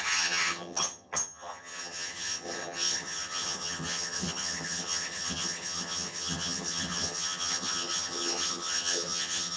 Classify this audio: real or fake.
fake